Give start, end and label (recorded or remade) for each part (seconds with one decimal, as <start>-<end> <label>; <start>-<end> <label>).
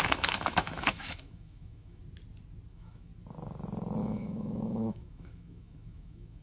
0.0-2.0 remade; 2.0-2.7 recorded; 2.7-3.1 remade; 3.1-4.0 recorded; 4.0-6.4 remade